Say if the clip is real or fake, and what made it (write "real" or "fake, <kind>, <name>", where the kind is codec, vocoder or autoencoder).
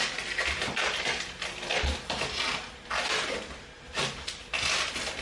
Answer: real